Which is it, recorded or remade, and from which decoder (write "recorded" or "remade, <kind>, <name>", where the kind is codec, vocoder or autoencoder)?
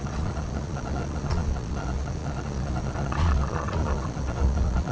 remade, vocoder, Vocos